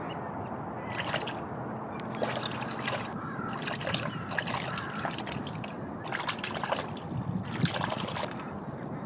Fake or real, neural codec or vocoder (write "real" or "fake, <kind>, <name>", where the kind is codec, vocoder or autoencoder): real